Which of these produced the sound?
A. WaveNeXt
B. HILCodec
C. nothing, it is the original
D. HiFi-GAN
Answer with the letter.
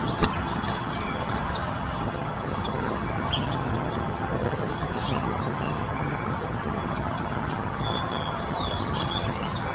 D